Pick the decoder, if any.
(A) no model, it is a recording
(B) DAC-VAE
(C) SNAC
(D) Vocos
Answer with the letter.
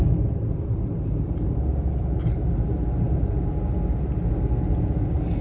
A